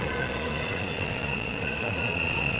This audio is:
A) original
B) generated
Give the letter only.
B